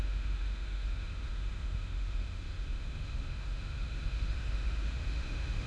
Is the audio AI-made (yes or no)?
yes